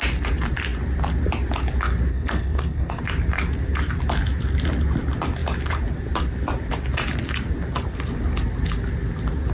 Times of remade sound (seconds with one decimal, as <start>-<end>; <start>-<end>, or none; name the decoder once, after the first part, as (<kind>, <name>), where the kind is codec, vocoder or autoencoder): 2.1-3.0 (codec, SNAC)